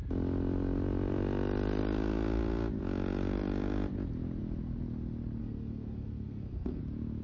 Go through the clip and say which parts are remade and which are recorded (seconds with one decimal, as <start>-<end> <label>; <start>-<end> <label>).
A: 0.0-5.4 recorded; 5.4-6.8 remade; 6.8-7.2 recorded